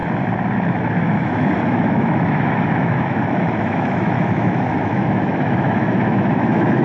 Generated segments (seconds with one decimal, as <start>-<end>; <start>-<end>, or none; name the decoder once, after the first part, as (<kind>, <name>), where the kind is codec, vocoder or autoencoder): 0.8-6.8 (autoencoder, DAC-VAE)